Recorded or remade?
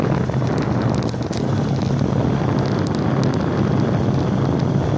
recorded